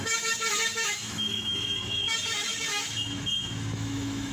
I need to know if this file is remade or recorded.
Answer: remade